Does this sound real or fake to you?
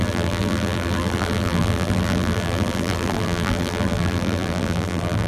fake